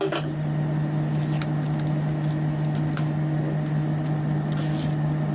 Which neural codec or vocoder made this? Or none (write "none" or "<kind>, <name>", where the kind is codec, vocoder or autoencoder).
none